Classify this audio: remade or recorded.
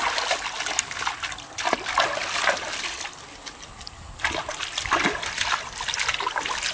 recorded